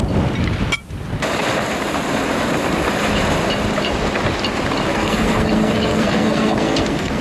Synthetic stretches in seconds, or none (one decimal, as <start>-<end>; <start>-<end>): 4.9-7.2